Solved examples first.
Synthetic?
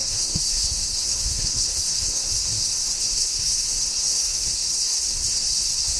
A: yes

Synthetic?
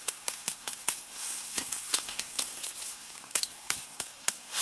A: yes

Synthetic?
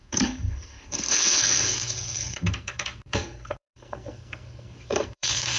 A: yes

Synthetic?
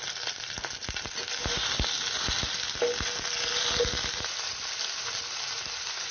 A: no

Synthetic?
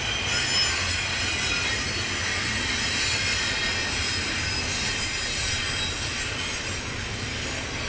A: no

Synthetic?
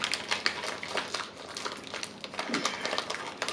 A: no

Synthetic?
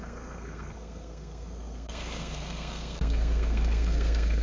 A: yes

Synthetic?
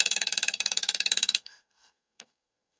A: yes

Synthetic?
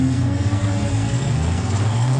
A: yes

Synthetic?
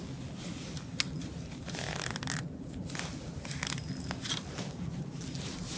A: no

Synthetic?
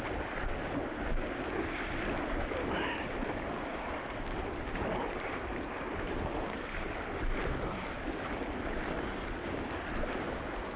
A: no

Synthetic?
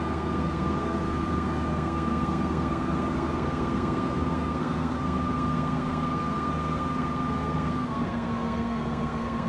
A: yes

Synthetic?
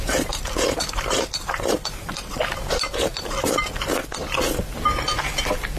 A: no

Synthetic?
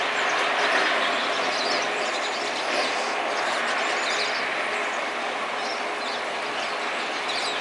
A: no